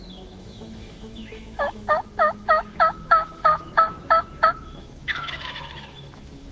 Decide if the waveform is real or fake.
fake